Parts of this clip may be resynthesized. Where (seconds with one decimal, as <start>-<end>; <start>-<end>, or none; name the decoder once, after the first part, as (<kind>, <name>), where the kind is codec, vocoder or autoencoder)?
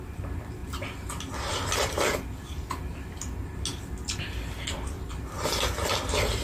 none